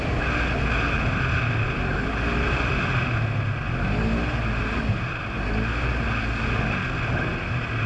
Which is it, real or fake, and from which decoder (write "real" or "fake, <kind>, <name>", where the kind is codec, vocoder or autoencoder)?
real